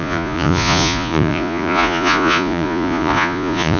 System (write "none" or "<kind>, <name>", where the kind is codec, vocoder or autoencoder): vocoder, Vocos